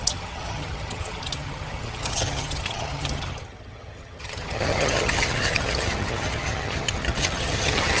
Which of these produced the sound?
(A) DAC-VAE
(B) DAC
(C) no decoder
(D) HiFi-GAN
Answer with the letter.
D